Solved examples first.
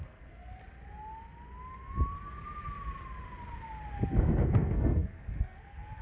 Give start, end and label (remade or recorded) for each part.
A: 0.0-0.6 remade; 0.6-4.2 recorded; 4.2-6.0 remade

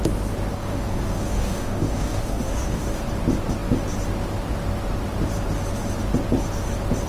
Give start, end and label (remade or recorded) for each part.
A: 0.0-0.5 recorded; 0.5-3.0 remade; 3.0-7.1 recorded

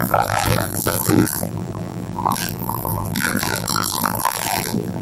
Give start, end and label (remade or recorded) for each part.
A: 0.0-5.0 remade

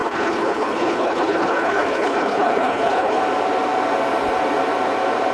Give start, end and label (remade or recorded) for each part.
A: 0.0-3.2 remade; 3.2-5.3 recorded

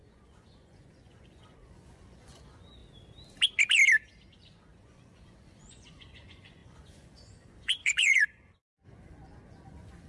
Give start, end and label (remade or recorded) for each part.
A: 0.0-2.8 remade; 2.8-4.3 recorded; 4.3-10.1 remade

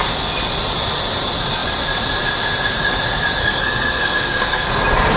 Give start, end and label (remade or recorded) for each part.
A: 0.0-3.4 recorded; 3.4-4.7 remade; 4.7-5.2 recorded

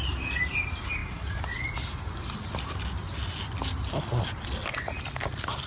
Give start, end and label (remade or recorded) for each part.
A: 0.0-5.7 recorded